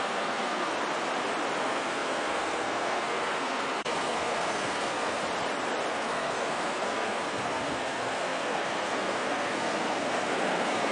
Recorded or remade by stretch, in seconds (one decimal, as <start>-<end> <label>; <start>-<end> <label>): 0.0-0.7 remade; 0.7-1.6 recorded; 1.6-5.2 remade; 5.2-5.9 recorded; 5.9-10.9 remade